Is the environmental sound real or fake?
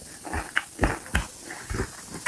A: real